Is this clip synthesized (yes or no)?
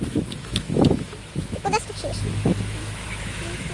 yes